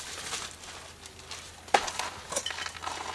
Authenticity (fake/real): real